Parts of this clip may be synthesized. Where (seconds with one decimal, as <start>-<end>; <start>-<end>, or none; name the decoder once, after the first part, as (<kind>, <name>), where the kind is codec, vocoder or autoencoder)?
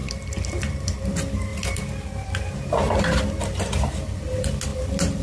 none